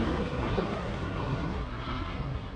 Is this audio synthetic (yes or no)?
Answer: yes